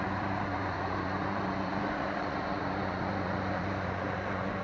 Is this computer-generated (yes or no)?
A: yes